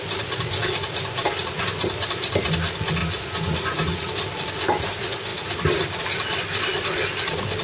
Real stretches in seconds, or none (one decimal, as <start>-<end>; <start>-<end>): 0.0-3.0; 4.1-7.6